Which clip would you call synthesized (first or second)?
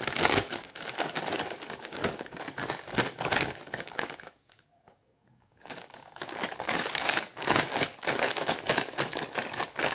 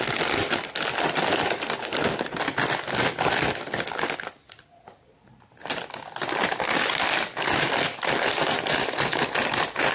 first